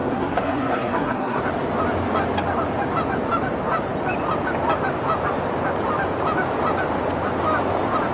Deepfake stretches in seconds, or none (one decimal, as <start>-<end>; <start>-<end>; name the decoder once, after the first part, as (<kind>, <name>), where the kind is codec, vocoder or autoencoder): 0.0-1.4 (codec, SNAC)